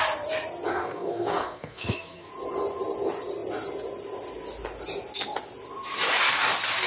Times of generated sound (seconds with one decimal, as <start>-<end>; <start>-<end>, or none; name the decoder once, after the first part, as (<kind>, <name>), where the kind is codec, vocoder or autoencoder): 0.7-2.3 (codec, SNAC)